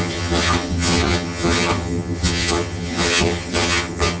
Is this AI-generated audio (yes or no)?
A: yes